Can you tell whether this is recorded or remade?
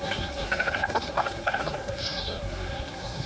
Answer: remade